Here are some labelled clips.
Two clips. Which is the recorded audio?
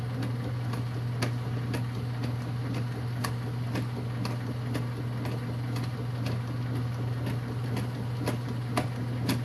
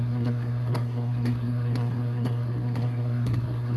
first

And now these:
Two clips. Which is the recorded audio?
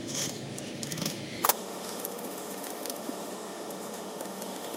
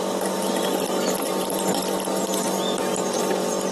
second